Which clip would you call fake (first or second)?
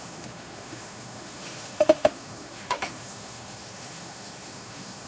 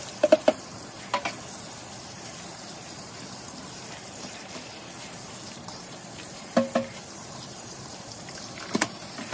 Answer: first